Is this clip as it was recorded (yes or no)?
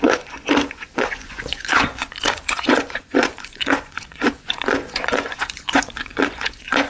no